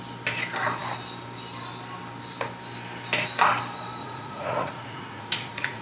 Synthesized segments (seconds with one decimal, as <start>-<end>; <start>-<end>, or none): 4.0-5.8